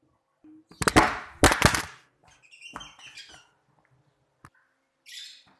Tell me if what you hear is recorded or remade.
recorded